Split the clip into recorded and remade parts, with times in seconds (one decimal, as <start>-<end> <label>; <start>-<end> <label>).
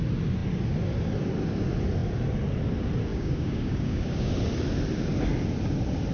0.0-3.1 recorded; 3.1-4.3 remade; 4.3-6.1 recorded